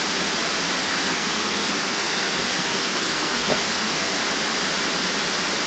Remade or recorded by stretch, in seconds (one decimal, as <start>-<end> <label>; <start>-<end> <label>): 0.0-0.8 recorded; 0.8-4.2 remade; 4.2-5.7 recorded